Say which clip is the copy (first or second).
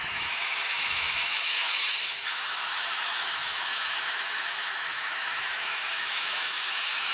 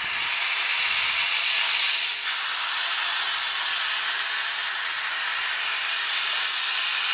first